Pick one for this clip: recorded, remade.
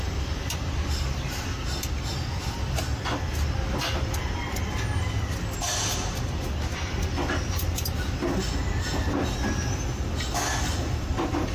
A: recorded